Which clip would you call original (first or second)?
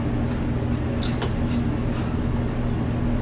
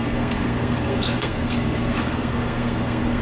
first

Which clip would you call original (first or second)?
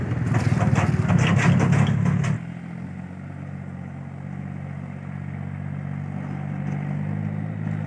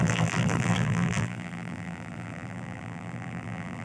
first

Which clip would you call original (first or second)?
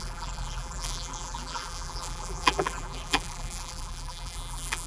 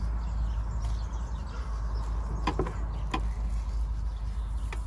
second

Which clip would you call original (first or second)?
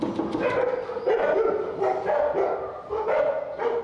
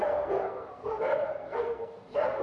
first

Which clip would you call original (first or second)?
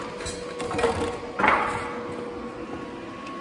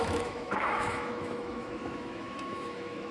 first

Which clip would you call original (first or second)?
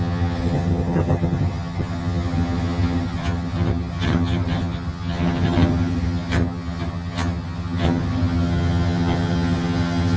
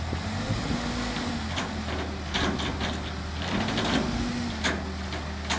second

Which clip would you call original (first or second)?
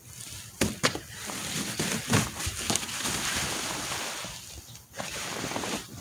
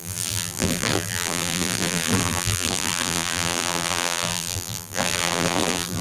first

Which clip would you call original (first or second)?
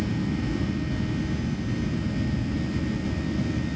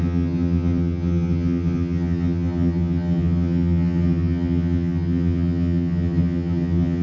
first